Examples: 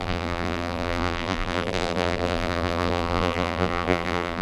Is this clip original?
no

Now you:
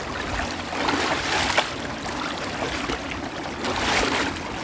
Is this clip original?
no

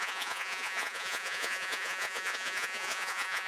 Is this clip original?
no